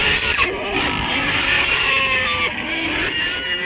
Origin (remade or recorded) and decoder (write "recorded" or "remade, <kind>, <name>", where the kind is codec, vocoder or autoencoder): recorded